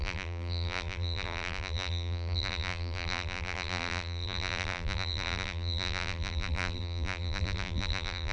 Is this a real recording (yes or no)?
no